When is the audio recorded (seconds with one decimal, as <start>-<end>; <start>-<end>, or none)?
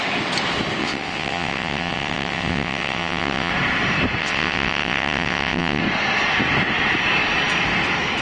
0.0-0.8; 3.5-4.2; 5.8-8.2